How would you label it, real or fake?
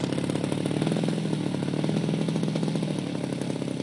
real